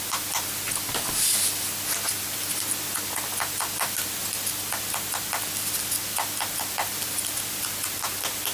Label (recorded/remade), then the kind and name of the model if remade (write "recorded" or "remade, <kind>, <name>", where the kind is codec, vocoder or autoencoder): recorded